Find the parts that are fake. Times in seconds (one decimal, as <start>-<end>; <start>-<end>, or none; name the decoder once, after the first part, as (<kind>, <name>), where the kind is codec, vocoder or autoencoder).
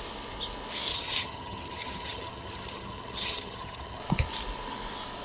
0.9-4.0 (vocoder, HiFi-GAN)